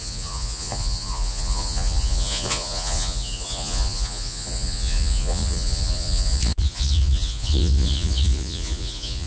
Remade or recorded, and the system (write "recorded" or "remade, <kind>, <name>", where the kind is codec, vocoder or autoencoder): remade, vocoder, Vocos